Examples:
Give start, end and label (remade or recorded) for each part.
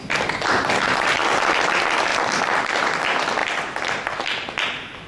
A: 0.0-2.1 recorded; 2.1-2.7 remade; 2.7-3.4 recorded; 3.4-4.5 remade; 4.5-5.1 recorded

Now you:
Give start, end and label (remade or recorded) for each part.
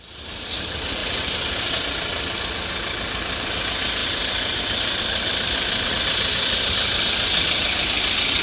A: 0.0-1.0 recorded; 1.0-1.8 remade; 1.8-4.0 recorded; 4.0-5.9 remade; 5.9-8.4 recorded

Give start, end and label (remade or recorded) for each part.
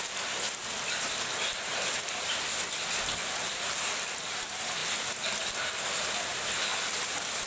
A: 0.0-6.7 recorded; 6.7-7.5 remade